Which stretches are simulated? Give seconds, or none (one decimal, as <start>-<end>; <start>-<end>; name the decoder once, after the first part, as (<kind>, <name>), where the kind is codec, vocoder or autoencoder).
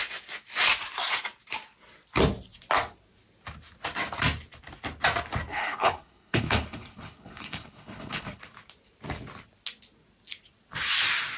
5.5-8.4 (codec, HILCodec)